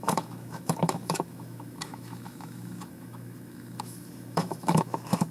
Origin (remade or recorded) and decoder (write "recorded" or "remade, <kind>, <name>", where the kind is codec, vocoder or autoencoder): remade, autoencoder, DAC-VAE